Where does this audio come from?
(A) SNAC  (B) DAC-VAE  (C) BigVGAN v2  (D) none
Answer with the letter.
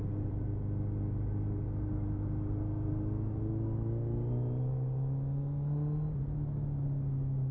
D